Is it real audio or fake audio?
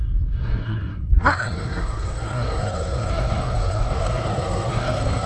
fake